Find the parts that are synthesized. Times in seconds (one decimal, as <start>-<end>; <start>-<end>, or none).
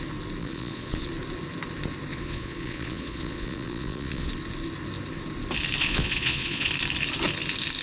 0.4-1.1; 2.1-4.3; 5.8-6.7